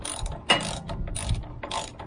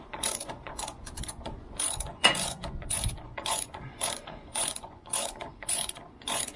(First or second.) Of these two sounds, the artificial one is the second